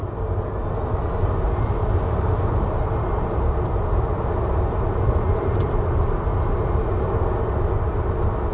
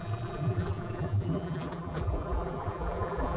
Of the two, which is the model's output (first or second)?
second